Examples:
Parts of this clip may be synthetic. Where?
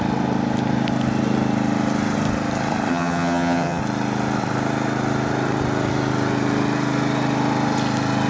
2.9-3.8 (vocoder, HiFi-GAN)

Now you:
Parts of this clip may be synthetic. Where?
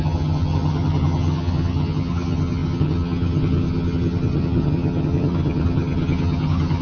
0.0-6.8 (vocoder, HiFi-GAN)